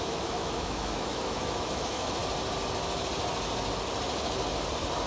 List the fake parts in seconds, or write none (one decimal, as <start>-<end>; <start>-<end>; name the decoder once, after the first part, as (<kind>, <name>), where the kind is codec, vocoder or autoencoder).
0.0-2.2 (autoencoder, DAC-VAE)